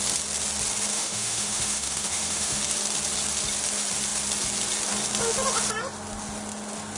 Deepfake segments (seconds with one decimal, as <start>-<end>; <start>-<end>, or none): 0.9-2.6